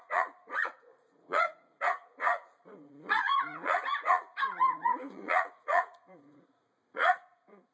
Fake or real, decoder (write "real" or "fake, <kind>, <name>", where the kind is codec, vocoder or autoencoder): fake, vocoder, Vocos